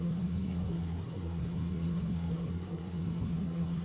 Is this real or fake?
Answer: fake